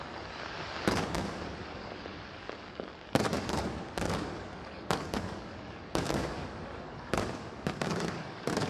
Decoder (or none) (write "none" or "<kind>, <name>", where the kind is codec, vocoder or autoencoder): codec, DAC